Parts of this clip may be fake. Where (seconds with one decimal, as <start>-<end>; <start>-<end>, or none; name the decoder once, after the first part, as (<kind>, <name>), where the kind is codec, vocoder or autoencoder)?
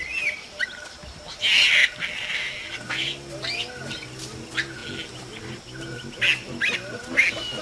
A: none